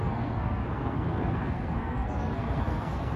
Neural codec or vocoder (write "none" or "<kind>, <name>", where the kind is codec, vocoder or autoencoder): codec, SNAC